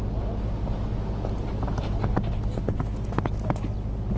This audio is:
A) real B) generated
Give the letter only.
A